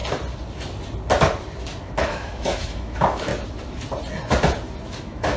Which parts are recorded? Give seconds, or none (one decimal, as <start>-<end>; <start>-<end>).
0.0-1.8; 3.3-5.0